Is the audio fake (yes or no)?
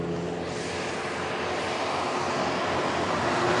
no